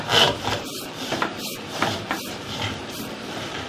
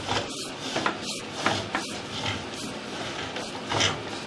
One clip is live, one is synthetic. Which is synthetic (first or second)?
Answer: first